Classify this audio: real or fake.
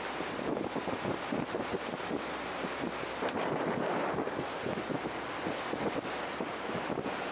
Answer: real